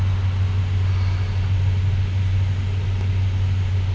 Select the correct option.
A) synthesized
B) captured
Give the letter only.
B